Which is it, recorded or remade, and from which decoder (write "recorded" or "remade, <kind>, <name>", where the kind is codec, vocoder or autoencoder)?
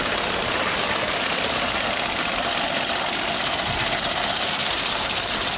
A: recorded